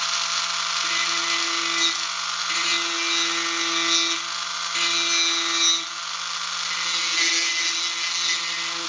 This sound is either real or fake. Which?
real